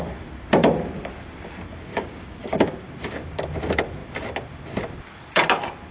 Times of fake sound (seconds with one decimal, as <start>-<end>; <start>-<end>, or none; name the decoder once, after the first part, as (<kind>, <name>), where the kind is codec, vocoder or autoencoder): 1.9-2.7 (codec, DAC)

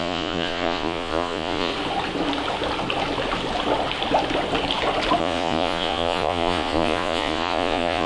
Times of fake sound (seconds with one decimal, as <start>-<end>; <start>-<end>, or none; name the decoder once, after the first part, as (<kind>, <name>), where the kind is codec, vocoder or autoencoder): 0.0-1.7 (vocoder, Vocos); 5.2-8.1